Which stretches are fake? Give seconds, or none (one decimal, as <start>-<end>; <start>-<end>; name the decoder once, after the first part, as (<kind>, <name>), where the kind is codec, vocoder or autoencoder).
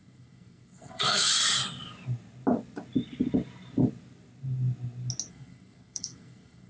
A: 0.0-1.3 (codec, SNAC); 5.3-6.7